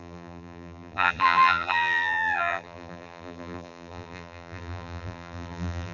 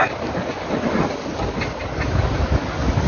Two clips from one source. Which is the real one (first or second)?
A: second